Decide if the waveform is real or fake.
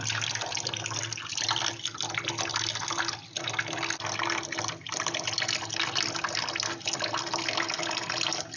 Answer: real